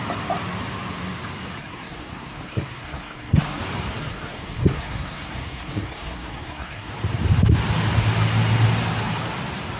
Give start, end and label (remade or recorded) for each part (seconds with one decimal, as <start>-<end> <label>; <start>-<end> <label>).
0.0-1.6 recorded; 1.6-3.6 remade; 3.6-4.0 recorded; 4.0-6.9 remade; 6.9-9.8 recorded